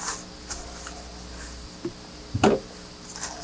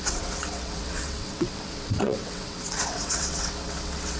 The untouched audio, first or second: first